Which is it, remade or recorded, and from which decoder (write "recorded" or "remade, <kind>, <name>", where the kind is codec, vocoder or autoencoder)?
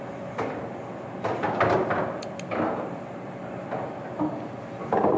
recorded